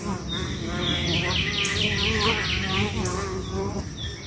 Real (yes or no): yes